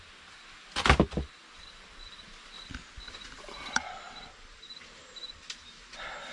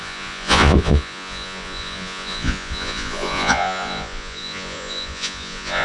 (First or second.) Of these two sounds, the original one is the first